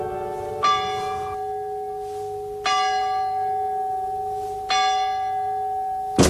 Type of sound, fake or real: real